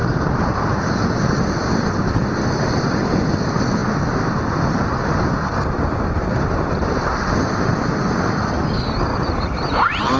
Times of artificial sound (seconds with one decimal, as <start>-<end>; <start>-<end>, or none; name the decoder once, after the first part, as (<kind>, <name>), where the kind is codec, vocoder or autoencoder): 9.1-10.2 (vocoder, BigVGAN v2)